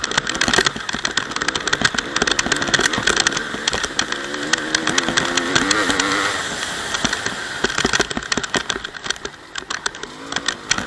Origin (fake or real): real